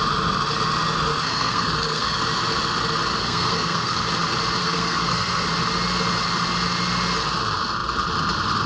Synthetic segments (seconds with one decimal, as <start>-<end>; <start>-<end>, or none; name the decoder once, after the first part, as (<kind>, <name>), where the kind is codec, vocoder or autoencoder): 1.1-2.2 (codec, SNAC); 3.2-4.1; 4.6-5.5